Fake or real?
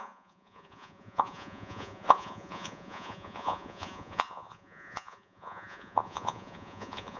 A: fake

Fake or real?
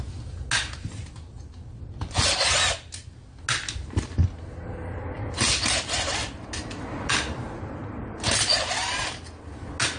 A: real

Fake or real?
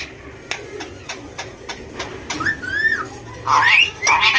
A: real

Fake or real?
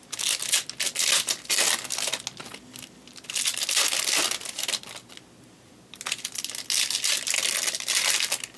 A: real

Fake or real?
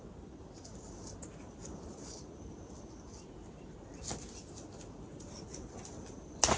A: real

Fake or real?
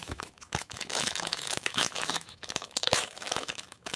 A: fake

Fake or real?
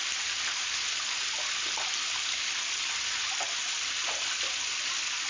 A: real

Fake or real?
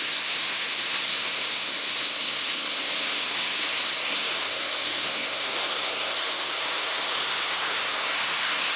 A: fake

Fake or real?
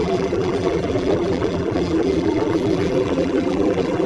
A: fake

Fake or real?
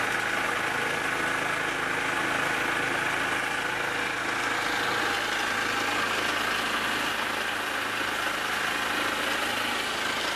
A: real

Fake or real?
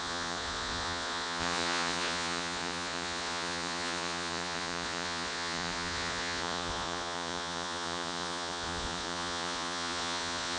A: fake